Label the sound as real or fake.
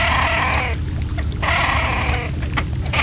real